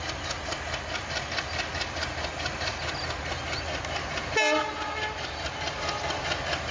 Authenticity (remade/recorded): recorded